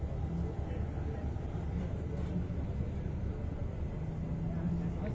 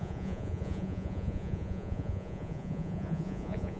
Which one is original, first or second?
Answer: first